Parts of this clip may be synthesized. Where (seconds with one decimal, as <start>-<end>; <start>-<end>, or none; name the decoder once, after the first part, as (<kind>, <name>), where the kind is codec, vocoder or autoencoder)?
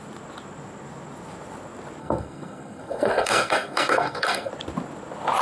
2.0-4.5 (codec, SNAC)